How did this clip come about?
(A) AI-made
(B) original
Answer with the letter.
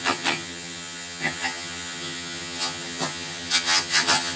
A